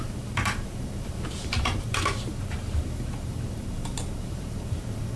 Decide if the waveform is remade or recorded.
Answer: remade